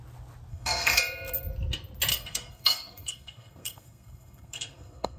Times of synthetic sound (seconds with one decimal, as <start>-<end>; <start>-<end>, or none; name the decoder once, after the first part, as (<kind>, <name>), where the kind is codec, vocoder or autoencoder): 0.5-1.0 (codec, SNAC); 2.1-5.2